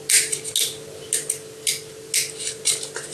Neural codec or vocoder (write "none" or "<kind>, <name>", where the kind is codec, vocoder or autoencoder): none